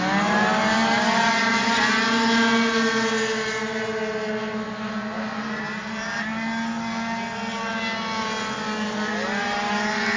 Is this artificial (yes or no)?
no